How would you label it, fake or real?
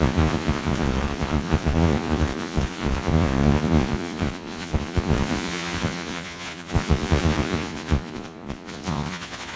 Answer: fake